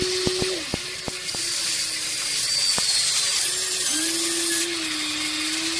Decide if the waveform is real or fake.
real